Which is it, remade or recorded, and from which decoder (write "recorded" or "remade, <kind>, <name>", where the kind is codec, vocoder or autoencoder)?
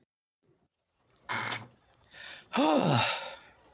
remade, vocoder, Vocos